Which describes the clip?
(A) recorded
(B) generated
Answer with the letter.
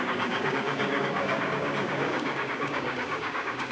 B